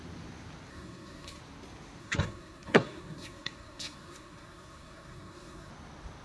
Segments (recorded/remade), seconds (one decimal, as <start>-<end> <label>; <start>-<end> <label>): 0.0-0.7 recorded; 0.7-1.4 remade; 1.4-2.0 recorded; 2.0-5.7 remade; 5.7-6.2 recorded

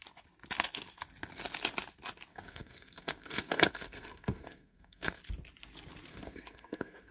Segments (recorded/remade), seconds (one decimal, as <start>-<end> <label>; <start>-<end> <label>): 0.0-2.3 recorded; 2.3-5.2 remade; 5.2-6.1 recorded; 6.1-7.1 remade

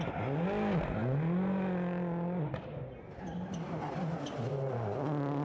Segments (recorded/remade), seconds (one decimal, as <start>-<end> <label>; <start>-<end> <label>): 0.0-5.4 recorded